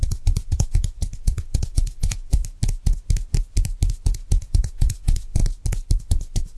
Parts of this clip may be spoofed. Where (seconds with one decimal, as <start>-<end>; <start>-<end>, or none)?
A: 0.0-2.4; 4.4-5.4; 6.0-6.6